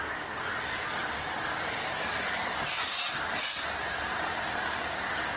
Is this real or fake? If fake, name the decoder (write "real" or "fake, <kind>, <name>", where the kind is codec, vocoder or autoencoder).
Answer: real